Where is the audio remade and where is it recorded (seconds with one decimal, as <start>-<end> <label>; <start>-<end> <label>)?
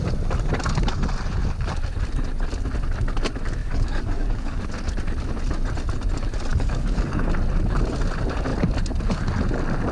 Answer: 0.0-3.6 recorded; 3.6-4.6 remade; 4.6-6.5 recorded; 6.5-7.3 remade; 7.3-9.9 recorded